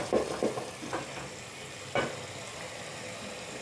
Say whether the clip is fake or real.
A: real